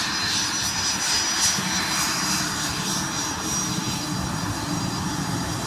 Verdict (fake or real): real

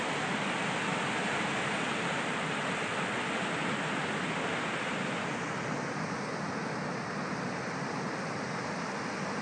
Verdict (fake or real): real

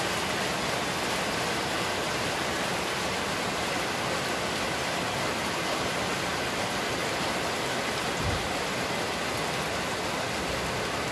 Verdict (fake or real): real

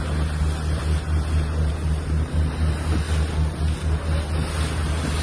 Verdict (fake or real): real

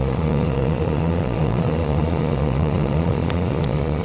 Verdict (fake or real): fake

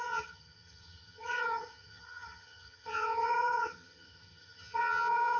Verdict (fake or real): fake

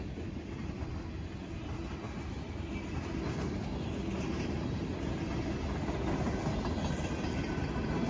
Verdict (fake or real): real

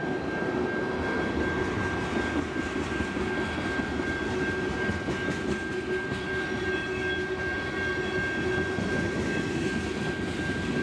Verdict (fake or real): real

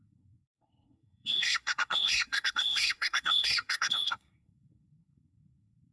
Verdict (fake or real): fake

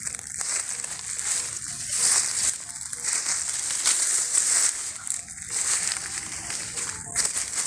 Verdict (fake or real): real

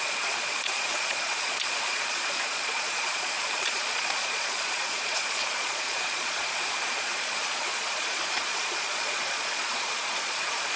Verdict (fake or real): fake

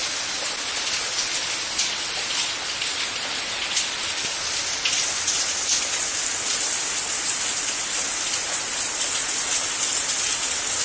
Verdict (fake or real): real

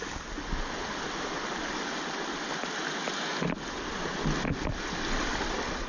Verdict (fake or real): real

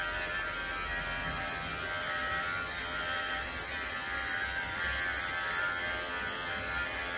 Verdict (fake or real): real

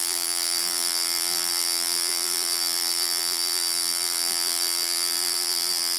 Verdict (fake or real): fake